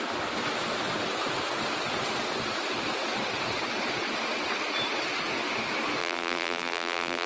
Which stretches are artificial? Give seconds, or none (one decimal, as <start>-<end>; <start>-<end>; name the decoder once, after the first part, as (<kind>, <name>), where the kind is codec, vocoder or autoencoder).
6.0-7.3 (vocoder, BigVGAN v2)